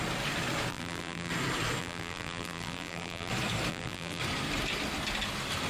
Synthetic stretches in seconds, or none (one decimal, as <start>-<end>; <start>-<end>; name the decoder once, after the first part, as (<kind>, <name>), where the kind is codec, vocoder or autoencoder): 0.7-1.3 (vocoder, BigVGAN v2); 1.8-3.3; 3.7-4.2